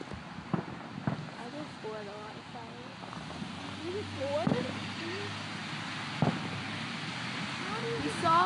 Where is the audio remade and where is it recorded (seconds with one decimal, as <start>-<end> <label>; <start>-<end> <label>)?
0.0-8.5 recorded